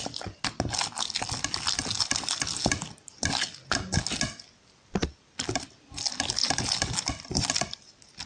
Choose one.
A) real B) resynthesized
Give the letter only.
A